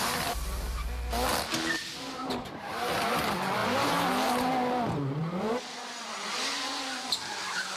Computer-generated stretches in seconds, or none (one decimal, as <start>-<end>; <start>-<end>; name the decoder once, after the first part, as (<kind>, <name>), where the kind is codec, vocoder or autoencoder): 2.2-2.7 (vocoder, BigVGAN v2); 3.6-4.5